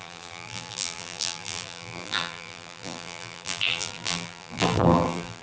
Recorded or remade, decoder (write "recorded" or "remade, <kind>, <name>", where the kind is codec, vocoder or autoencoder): remade, vocoder, BigVGAN v2